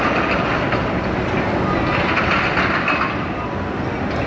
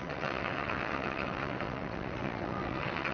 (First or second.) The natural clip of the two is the first